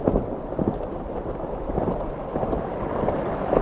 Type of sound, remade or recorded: recorded